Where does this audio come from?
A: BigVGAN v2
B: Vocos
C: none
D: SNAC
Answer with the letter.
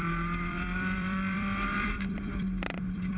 A